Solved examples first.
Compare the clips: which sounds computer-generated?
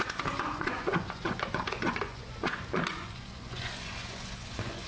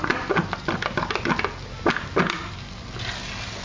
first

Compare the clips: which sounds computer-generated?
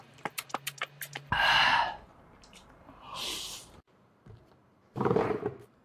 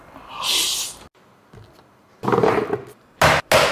first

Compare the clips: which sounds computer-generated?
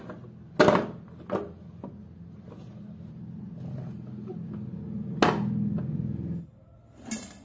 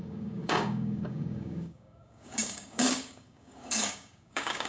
second